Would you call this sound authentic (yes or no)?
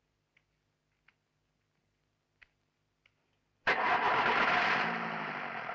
yes